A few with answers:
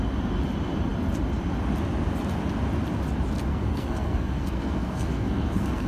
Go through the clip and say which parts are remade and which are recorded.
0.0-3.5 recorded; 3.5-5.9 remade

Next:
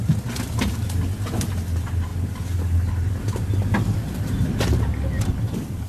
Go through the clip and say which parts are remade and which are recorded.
0.0-5.9 recorded

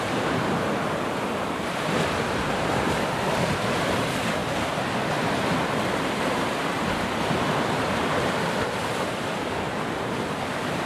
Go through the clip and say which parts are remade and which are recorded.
0.0-4.4 remade; 4.4-5.9 recorded; 5.9-8.8 remade; 8.8-10.5 recorded; 10.5-10.9 remade

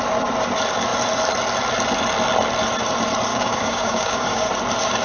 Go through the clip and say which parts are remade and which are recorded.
0.0-3.3 recorded; 3.3-4.5 remade; 4.5-5.0 recorded

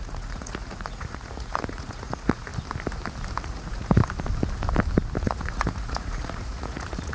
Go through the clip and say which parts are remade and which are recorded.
0.0-2.5 remade; 2.5-3.4 recorded; 3.4-4.0 remade; 4.0-5.2 recorded; 5.2-7.1 remade